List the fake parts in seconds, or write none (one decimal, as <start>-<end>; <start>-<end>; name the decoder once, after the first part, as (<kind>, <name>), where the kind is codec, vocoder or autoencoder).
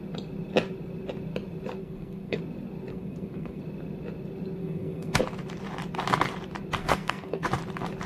1.8-2.4 (codec, SNAC); 2.9-3.6; 4.6-5.2; 6.8-7.5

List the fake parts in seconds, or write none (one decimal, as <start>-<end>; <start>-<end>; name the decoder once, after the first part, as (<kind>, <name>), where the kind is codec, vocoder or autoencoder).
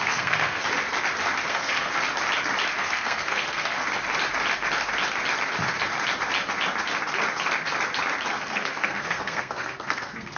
0.0-0.6 (codec, SNAC); 1.5-1.9; 2.8-3.8; 8.3-10.4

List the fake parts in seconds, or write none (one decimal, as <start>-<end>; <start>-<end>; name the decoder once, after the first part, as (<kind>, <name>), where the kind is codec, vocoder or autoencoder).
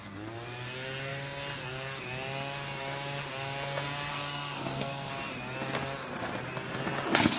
4.1-5.1 (codec, SNAC)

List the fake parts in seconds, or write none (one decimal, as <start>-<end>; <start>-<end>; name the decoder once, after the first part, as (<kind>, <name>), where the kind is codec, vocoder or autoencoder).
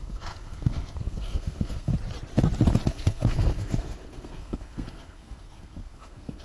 0.0-1.9 (codec, SNAC); 2.9-6.4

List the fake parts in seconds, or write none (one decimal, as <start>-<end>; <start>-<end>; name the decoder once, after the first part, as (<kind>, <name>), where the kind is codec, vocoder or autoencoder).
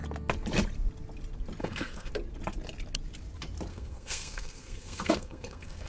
1.6-2.1 (codec, SNAC); 3.7-5.9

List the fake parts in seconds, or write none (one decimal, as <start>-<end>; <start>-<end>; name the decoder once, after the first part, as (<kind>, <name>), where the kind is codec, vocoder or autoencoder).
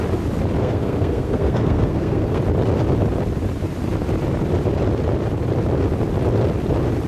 0.6-2.4 (codec, SNAC)